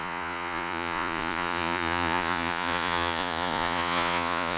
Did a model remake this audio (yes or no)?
yes